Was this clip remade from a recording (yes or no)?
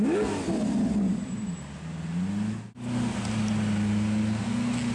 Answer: no